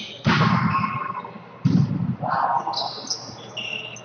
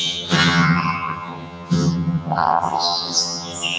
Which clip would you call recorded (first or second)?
first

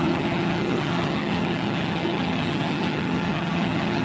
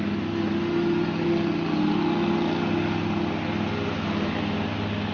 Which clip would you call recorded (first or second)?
second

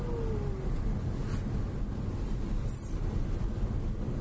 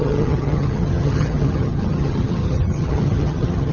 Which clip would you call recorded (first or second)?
first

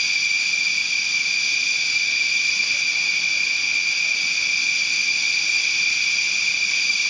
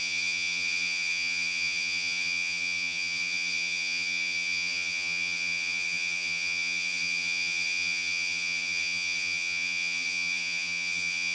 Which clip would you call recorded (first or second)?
first